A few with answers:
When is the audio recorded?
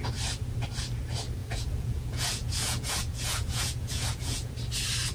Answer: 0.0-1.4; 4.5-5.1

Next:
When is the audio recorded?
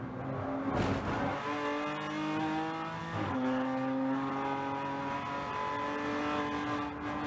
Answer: 0.0-3.0; 4.3-7.3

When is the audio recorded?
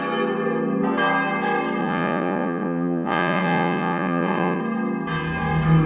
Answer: 0.0-1.8; 4.6-5.9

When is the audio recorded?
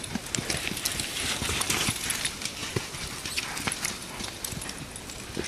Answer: 0.0-0.9; 1.8-2.6; 3.3-5.5